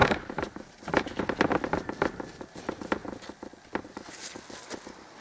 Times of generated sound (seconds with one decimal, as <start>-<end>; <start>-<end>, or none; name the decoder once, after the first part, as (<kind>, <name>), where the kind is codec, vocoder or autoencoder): 0.0-0.8 (vocoder, BigVGAN v2)